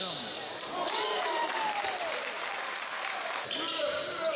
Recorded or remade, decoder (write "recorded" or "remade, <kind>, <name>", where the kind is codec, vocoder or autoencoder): remade, vocoder, BigVGAN v2